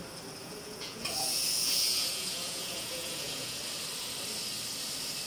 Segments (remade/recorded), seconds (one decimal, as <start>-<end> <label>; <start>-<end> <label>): 0.0-0.4 recorded; 0.4-3.6 remade; 3.6-5.3 recorded